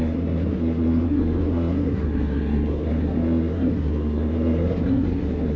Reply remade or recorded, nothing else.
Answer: remade